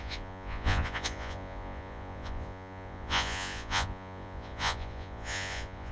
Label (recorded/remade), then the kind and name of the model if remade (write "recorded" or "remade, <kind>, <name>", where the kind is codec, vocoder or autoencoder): remade, vocoder, Vocos